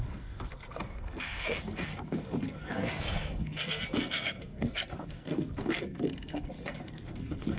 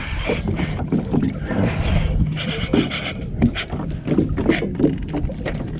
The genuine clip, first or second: second